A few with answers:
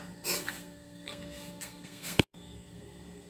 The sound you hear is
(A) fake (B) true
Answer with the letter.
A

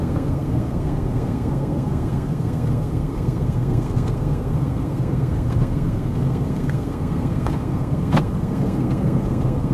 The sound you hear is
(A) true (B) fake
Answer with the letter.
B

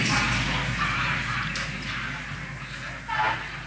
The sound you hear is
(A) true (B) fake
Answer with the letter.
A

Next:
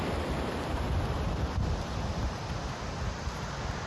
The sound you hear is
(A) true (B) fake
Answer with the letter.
A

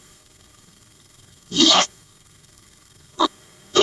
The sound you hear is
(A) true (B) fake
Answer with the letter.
B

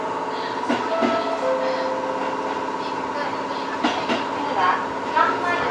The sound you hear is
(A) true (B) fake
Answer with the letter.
A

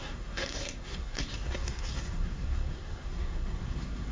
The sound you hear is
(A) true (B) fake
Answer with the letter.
B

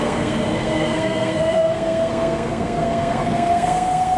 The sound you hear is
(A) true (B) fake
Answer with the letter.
B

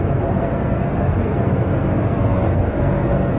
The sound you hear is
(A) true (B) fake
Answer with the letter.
B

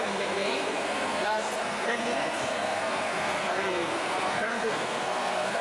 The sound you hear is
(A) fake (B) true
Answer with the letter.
A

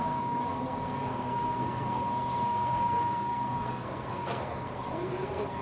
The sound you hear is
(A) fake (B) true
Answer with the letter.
A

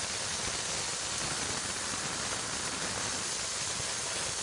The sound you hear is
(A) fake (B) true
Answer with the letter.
B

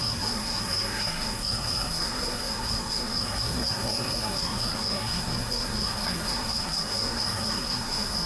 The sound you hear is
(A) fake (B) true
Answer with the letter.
A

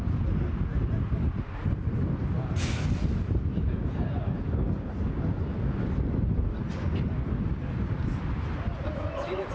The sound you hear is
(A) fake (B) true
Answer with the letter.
B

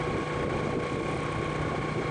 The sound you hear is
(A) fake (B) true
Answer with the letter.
B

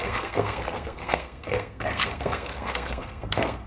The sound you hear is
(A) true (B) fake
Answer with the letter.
B